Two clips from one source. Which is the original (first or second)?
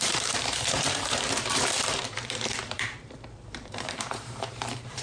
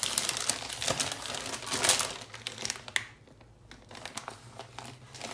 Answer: second